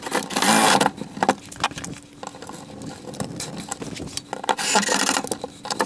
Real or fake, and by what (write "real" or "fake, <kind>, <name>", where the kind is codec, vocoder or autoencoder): real